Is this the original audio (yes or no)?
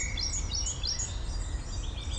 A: yes